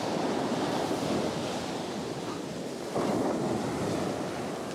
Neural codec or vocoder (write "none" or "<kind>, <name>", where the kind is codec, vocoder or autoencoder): none